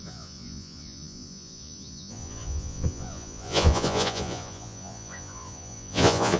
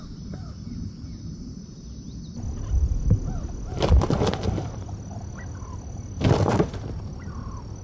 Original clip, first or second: second